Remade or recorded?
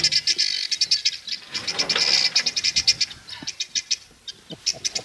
recorded